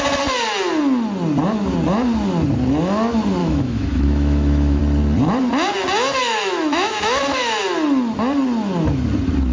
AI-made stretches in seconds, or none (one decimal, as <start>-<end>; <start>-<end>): 3.4-4.8; 6.2-7.6